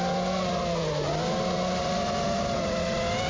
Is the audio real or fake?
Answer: real